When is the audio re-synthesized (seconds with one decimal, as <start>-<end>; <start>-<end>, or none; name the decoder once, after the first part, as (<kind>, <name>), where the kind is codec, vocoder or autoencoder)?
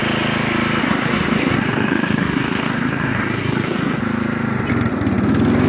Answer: 0.8-4.0 (codec, SNAC)